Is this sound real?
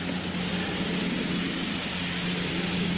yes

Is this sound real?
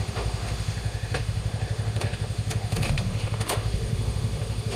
no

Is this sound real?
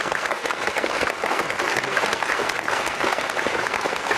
no